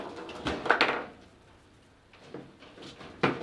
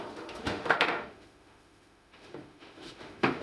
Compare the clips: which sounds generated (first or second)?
second